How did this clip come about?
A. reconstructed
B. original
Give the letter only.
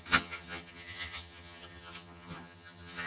A